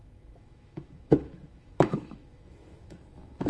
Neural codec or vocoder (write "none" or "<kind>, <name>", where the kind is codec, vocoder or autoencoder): autoencoder, DAC-VAE